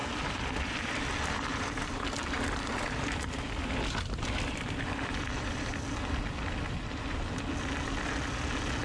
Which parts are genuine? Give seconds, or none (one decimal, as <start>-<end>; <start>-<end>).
1.0-1.5; 5.7-8.8